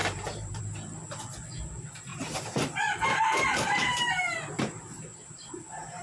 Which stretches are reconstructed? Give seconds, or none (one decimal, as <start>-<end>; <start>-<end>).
0.0-0.6; 2.1-6.0